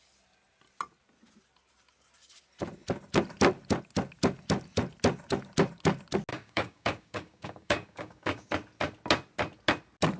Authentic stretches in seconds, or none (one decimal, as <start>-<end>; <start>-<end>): 0.0-6.3; 8.5-10.2